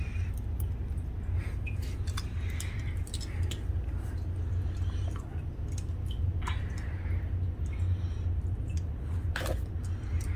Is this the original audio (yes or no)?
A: yes